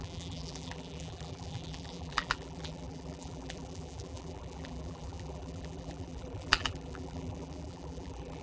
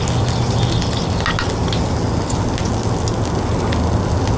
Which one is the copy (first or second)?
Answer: first